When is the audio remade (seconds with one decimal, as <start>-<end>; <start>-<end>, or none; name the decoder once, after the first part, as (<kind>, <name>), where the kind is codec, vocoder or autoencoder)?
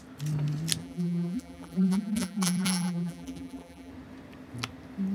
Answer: 0.8-3.9 (vocoder, BigVGAN v2)